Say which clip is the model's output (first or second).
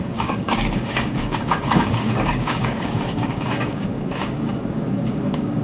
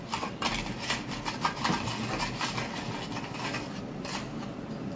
first